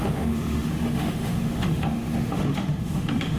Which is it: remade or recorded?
remade